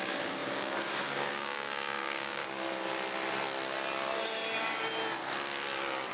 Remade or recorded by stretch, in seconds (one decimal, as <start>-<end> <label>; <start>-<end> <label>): 0.0-2.4 remade; 2.4-6.1 recorded

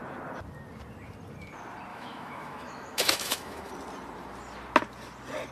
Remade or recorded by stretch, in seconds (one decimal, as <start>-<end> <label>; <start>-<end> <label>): 0.0-1.9 recorded; 1.9-3.7 remade; 3.7-5.5 recorded

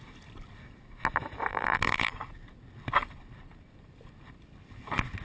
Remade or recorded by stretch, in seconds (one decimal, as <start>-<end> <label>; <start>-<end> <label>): 0.0-1.5 recorded; 1.5-2.1 remade; 2.1-5.2 recorded

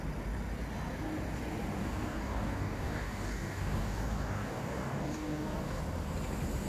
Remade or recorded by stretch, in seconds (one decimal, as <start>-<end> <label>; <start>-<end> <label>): 0.0-1.8 recorded; 1.8-5.8 remade; 5.8-6.7 recorded

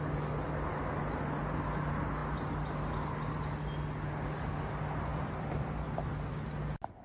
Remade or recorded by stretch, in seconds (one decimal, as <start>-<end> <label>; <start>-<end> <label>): 0.0-5.1 recorded; 5.1-6.3 remade; 6.3-7.0 recorded

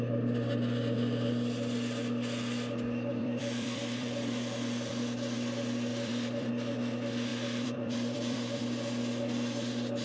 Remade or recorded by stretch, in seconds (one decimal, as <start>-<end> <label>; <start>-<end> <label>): 0.0-3.1 recorded; 3.1-4.9 remade; 4.9-5.9 recorded; 5.9-6.5 remade; 6.5-7.3 recorded; 7.3-8.6 remade; 8.6-10.0 recorded